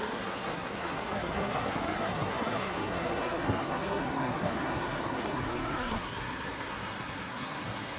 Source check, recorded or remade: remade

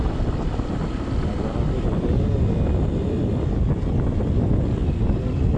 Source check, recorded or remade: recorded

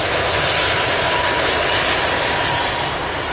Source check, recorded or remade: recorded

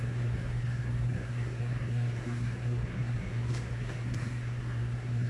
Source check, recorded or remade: remade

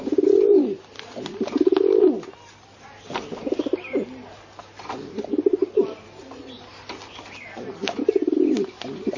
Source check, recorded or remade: recorded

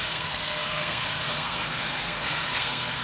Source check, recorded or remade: remade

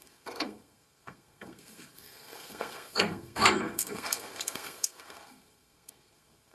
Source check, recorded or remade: remade